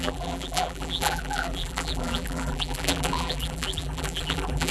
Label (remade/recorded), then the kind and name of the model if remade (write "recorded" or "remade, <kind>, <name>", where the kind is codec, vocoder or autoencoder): remade, vocoder, BigVGAN v2